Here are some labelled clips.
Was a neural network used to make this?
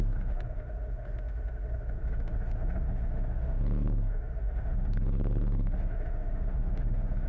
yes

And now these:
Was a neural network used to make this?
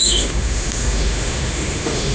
yes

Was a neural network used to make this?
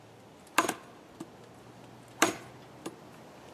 no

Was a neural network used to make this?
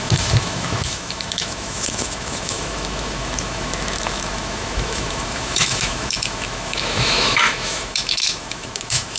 yes